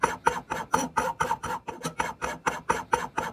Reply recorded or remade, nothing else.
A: recorded